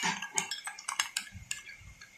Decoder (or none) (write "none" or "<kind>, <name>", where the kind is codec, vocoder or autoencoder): none